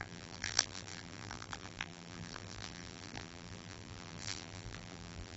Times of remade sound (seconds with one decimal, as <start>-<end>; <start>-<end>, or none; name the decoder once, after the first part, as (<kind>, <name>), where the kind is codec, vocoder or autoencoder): 0.0-5.4 (vocoder, BigVGAN v2)